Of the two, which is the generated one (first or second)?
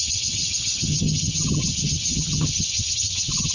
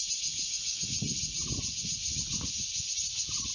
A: first